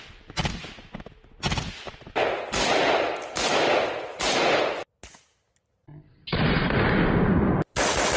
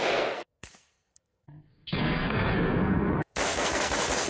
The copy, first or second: second